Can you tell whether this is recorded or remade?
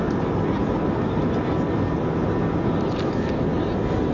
recorded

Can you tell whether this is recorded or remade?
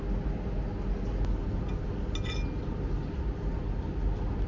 recorded